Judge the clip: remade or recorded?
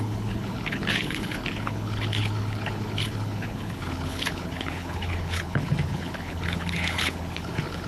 remade